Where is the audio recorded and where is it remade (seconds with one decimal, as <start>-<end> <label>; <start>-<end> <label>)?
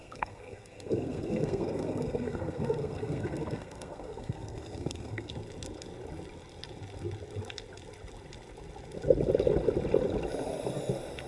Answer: 0.0-5.3 remade; 5.3-11.3 recorded